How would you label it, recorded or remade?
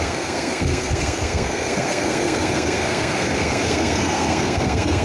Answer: remade